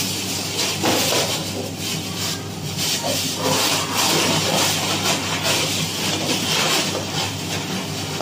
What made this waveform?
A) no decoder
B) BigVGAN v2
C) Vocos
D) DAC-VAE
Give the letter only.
A